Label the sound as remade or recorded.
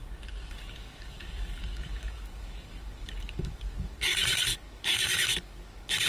remade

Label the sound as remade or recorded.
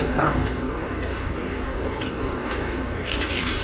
remade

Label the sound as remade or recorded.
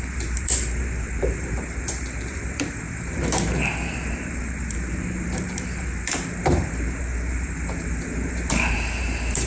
remade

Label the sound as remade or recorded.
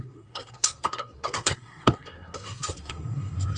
remade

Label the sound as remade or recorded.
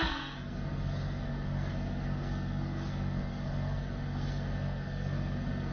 remade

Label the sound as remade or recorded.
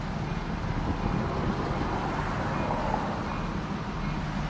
recorded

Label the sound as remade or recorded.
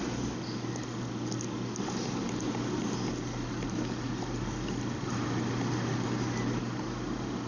recorded